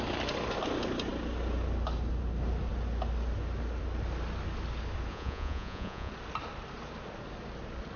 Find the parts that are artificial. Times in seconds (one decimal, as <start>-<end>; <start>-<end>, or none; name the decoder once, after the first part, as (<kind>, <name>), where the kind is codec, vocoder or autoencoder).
5.1-6.1 (vocoder, Vocos)